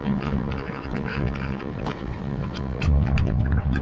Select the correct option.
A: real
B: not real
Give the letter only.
B